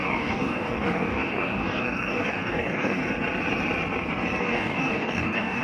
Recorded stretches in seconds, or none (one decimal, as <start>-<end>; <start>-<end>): 3.0-4.4